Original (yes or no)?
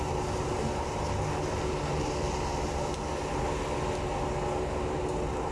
yes